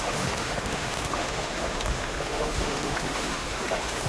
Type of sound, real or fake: fake